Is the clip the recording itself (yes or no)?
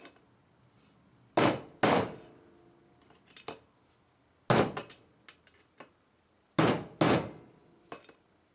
yes